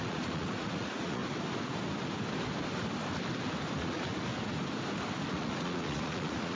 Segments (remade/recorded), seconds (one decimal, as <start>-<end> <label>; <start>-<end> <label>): 0.0-1.2 remade; 1.2-3.8 recorded; 3.8-4.3 remade; 4.3-5.3 recorded; 5.3-6.6 remade